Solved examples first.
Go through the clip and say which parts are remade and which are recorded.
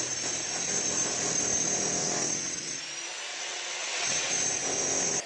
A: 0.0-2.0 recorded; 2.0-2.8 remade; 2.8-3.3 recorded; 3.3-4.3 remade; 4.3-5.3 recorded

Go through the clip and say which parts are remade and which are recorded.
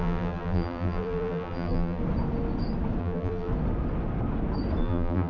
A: 0.0-2.0 remade; 2.0-3.0 recorded; 3.0-3.5 remade; 3.5-4.8 recorded; 4.8-5.3 remade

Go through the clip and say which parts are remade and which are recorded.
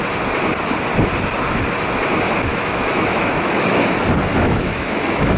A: 0.0-2.5 recorded; 2.5-3.8 remade; 3.8-4.3 recorded; 4.3-5.4 remade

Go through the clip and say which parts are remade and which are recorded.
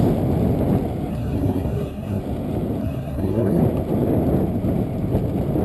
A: 0.0-1.1 recorded; 1.1-2.2 remade; 2.2-2.8 recorded; 2.8-3.6 remade; 3.6-5.6 recorded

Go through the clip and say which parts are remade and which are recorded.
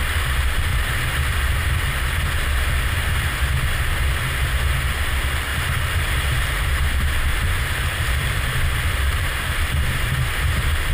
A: 0.0-0.7 recorded; 0.7-1.3 remade; 1.3-5.5 recorded; 5.5-6.8 remade; 6.8-7.3 recorded; 7.3-10.9 remade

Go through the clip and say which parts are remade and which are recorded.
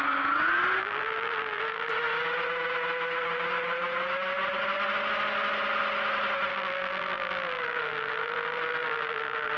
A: 0.0-0.8 recorded; 0.8-1.9 remade; 1.9-6.5 recorded; 6.5-9.6 remade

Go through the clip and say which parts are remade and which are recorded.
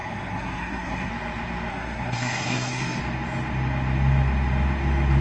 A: 0.0-1.1 remade; 1.1-1.7 recorded; 1.7-3.0 remade; 3.0-5.2 recorded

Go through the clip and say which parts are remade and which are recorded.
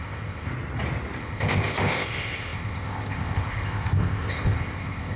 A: 0.0-0.5 remade; 0.5-1.2 recorded; 1.2-5.2 remade